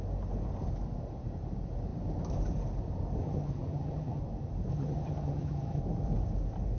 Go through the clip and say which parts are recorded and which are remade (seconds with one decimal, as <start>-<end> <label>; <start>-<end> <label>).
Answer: 0.0-3.2 recorded; 3.2-4.2 remade; 4.2-4.7 recorded; 4.7-5.8 remade; 5.8-6.8 recorded